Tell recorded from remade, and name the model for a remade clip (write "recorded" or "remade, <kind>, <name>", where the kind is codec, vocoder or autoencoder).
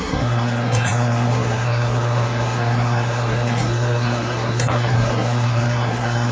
remade, codec, SNAC